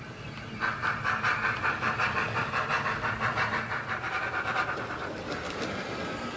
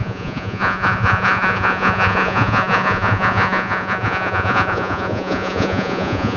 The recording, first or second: first